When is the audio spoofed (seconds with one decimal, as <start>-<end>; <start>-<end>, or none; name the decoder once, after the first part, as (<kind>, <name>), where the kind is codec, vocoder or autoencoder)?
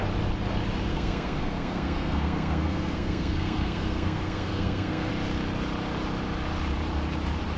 0.9-5.1 (codec, SNAC)